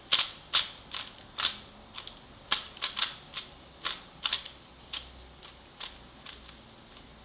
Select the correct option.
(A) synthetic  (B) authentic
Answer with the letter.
B